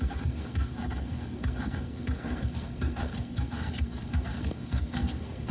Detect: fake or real fake